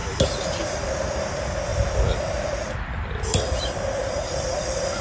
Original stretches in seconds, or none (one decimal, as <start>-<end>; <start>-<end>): 0.0-1.7